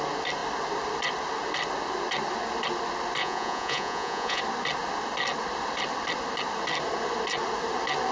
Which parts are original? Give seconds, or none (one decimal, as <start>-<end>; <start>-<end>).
0.0-3.2; 4.4-8.1